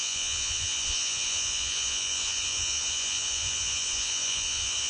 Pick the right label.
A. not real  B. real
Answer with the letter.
A